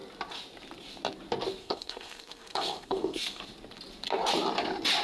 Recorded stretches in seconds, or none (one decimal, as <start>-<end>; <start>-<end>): 0.0-1.6; 3.4-5.0